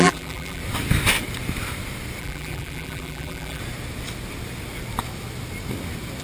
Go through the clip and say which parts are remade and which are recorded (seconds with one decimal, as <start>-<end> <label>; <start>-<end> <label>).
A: 0.0-0.6 remade; 0.6-2.2 recorded; 2.2-3.6 remade; 3.6-6.2 recorded